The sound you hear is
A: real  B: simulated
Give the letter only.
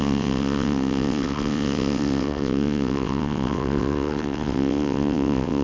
B